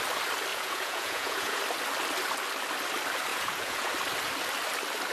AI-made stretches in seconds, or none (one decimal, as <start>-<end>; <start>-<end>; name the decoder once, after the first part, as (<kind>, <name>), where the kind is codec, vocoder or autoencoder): 0.5-1.6 (vocoder, Vocos); 3.3-3.9